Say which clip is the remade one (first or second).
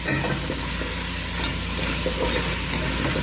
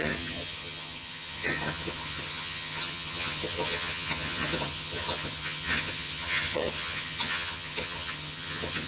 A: second